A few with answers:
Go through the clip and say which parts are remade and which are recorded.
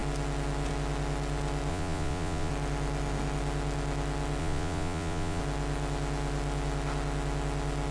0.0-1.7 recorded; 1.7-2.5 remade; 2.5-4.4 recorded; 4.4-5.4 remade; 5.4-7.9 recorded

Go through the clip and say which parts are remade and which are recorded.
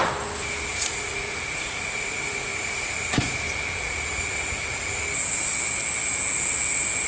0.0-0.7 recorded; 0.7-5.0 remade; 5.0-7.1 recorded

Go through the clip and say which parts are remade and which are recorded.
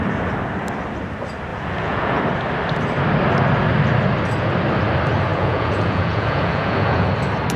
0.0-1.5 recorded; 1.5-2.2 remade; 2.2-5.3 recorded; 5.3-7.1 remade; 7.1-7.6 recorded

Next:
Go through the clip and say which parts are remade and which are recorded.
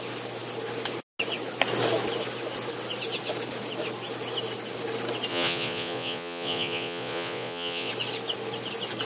0.0-5.3 recorded; 5.3-7.9 remade; 7.9-9.0 recorded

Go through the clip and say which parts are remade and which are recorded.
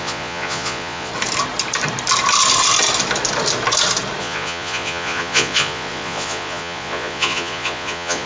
0.0-1.1 remade; 1.1-4.2 recorded; 4.2-8.3 remade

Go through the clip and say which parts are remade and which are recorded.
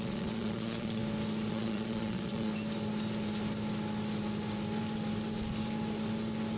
0.0-1.0 remade; 1.0-1.5 recorded; 1.5-2.5 remade; 2.5-6.6 recorded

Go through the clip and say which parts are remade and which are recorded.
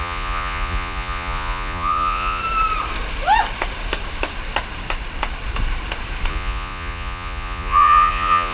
0.0-2.4 remade; 2.4-6.3 recorded; 6.3-8.5 remade